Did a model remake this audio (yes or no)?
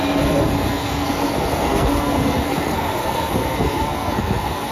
yes